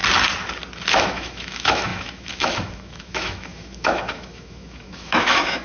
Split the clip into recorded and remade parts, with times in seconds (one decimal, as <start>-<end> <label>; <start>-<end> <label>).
0.0-0.9 recorded; 0.9-5.6 remade